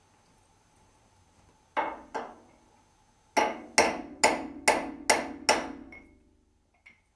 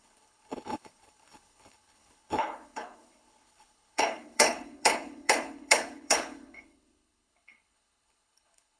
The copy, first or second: second